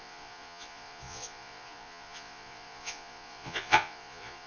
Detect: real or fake fake